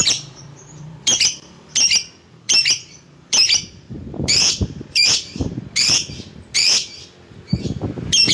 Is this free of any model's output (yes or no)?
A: no